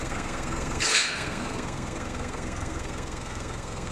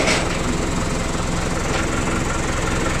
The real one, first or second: second